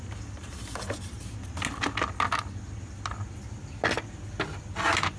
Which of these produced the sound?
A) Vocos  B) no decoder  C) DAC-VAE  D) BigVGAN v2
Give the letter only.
B